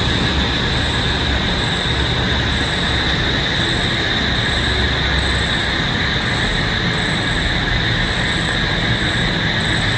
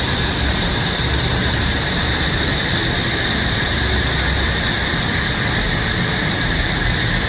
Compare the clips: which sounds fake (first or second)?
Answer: second